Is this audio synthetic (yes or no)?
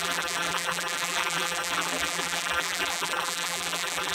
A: yes